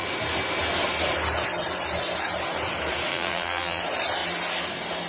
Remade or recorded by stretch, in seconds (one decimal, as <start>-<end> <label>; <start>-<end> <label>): 0.0-3.1 recorded; 3.1-3.8 remade; 3.8-5.1 recorded